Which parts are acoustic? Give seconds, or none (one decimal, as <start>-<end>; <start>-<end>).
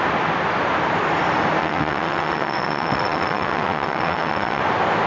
0.0-1.6; 4.6-5.1